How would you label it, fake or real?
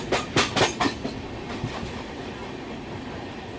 real